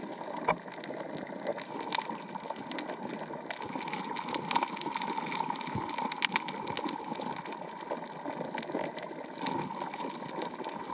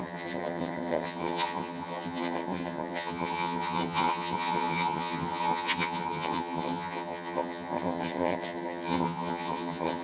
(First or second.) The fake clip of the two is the second